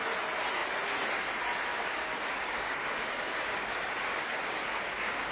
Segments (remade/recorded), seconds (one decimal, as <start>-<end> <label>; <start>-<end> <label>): 0.0-1.7 recorded; 1.7-5.3 remade